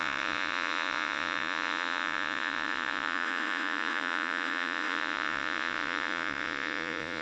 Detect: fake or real fake